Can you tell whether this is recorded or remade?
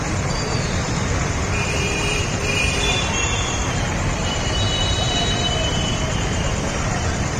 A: remade